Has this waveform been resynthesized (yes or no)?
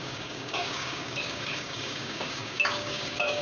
yes